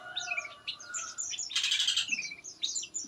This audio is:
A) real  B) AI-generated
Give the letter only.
A